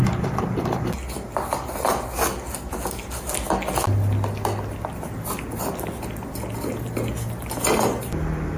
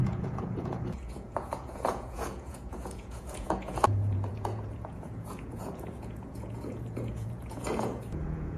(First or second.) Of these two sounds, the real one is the first